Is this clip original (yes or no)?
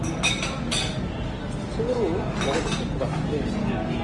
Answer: yes